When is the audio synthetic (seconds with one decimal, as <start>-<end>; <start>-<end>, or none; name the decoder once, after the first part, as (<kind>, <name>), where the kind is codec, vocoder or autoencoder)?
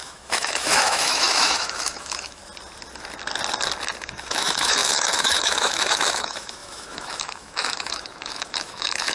0.0-2.4 (autoencoder, DAC-VAE); 4.0-9.1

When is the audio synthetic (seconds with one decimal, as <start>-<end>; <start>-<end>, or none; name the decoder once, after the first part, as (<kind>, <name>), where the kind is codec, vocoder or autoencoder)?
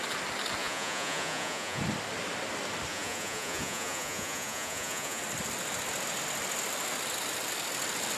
0.6-1.8 (vocoder, Vocos); 2.9-5.2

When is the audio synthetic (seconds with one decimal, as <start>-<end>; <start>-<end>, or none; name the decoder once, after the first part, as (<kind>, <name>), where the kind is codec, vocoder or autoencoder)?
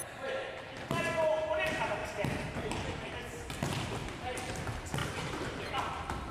0.0-1.0 (vocoder, BigVGAN v2); 4.0-4.5; 5.0-6.3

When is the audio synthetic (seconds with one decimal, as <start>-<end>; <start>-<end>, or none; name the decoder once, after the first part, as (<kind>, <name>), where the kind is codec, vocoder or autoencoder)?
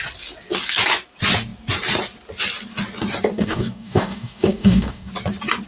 3.3-5.1 (codec, DAC)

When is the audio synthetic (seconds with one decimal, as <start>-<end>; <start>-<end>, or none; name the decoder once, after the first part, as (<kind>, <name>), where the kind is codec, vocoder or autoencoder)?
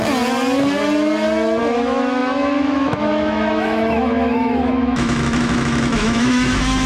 1.6-6.9 (autoencoder, DAC-VAE)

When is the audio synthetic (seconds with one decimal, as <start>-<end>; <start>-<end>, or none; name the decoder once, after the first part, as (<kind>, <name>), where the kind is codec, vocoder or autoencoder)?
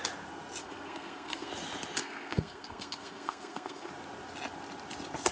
0.6-1.5 (codec, SNAC); 2.0-3.9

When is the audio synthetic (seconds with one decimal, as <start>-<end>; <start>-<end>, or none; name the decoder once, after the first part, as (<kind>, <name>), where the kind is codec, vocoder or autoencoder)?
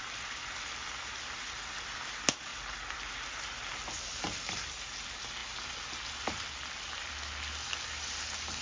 2.5-4.7 (vocoder, BigVGAN v2)